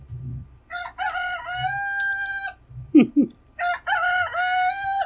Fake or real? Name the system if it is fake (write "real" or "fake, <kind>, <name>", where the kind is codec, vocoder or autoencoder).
real